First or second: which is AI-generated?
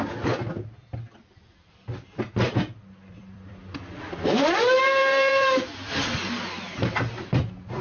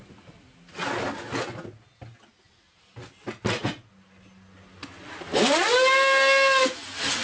first